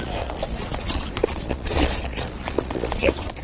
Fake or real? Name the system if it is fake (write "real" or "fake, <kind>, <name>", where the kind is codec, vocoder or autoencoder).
fake, vocoder, Vocos